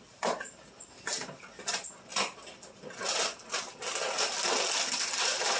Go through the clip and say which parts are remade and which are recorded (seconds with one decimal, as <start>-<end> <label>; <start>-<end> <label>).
0.0-5.6 recorded